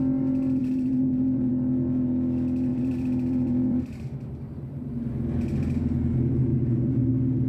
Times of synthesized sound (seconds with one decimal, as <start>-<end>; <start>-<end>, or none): 0.6-1.5; 2.7-4.9; 6.5-7.1